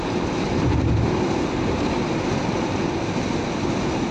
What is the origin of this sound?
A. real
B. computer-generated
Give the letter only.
A